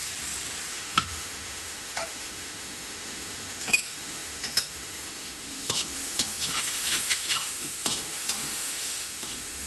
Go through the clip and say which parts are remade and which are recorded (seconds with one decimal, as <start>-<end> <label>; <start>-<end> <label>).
0.0-0.7 recorded; 0.7-9.7 remade